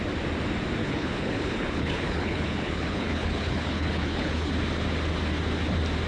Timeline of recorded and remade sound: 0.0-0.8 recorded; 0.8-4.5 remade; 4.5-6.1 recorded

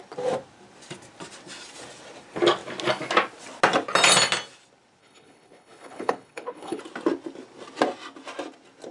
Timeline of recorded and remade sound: 0.0-5.0 recorded; 5.0-6.8 remade; 6.8-8.9 recorded

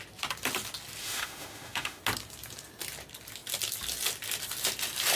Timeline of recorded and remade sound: 0.0-1.0 recorded; 1.0-2.0 remade; 2.0-5.2 recorded

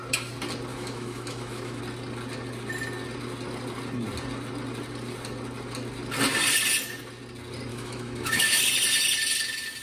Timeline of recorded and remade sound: 0.0-0.7 recorded; 0.7-1.8 remade; 1.8-7.7 recorded; 7.7-8.6 remade; 8.6-9.8 recorded

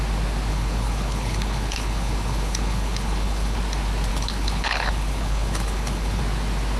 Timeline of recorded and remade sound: 0.0-0.5 recorded; 0.5-3.6 remade; 3.6-4.1 recorded; 4.1-6.2 remade; 6.2-6.8 recorded